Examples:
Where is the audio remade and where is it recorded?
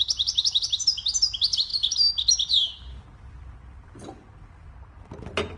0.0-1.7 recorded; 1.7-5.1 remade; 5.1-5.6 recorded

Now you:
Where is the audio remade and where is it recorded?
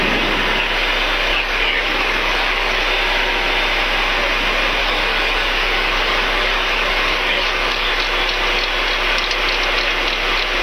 0.0-1.3 recorded; 1.3-2.8 remade; 2.8-4.8 recorded; 4.8-7.9 remade; 7.9-10.6 recorded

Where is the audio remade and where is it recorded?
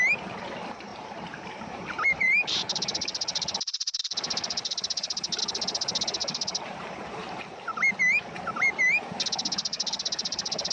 0.0-0.9 recorded; 0.9-5.4 remade; 5.4-6.2 recorded; 6.2-7.4 remade; 7.4-9.7 recorded; 9.7-10.7 remade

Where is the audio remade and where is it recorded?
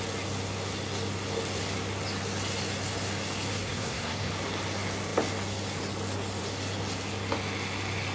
0.0-3.5 recorded; 3.5-4.3 remade; 4.3-8.1 recorded